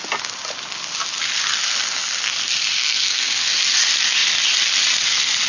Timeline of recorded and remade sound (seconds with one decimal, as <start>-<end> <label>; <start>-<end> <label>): 0.0-2.8 recorded; 2.8-3.5 remade; 3.5-5.5 recorded